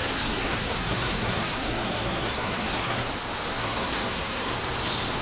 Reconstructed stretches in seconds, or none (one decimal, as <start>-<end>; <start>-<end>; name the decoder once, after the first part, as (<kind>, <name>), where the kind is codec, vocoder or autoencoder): 0.0-3.1 (codec, SNAC); 3.5-4.5